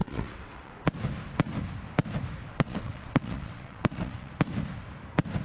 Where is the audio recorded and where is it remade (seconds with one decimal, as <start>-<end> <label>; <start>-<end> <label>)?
0.0-0.7 remade; 0.7-2.5 recorded; 2.5-4.3 remade; 4.3-5.4 recorded